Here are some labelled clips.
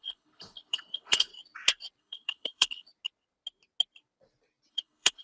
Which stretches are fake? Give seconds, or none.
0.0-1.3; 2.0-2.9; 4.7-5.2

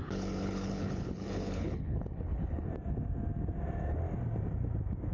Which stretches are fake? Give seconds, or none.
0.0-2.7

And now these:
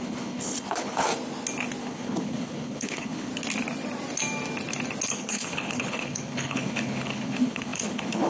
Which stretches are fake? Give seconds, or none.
0.0-1.1; 1.8-3.3; 5.1-8.3